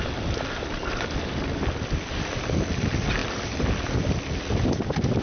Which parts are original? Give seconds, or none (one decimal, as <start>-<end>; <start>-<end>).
0.0-5.2